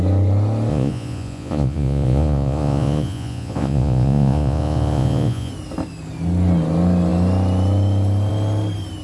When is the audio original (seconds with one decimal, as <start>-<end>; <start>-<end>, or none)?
0.0-0.7; 5.5-9.0